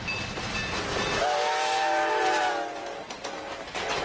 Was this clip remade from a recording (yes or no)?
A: no